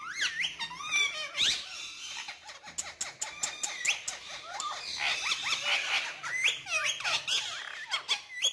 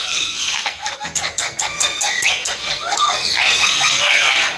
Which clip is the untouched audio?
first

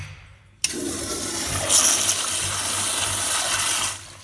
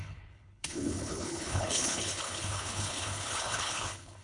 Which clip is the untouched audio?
first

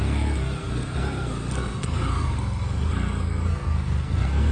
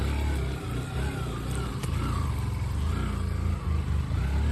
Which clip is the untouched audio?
second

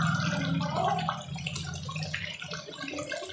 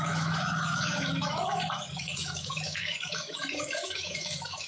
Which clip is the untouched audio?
first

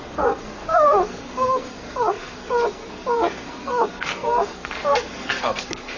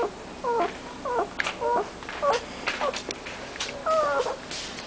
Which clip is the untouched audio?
second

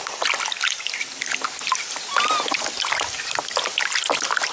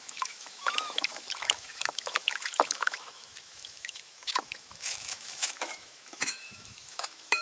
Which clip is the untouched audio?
first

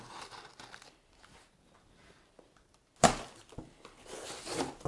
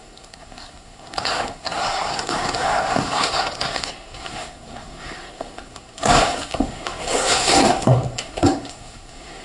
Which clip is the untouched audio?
first